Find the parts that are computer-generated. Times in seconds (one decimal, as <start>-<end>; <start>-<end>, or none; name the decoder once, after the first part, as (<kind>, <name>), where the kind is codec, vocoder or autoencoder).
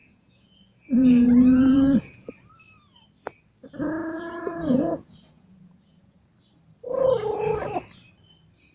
0.0-2.3 (vocoder, Vocos); 4.0-6.2